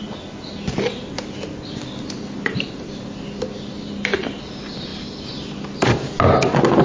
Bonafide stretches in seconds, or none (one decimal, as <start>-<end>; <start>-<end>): 0.0-6.8